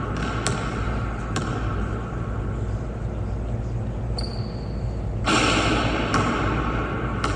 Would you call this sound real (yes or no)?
yes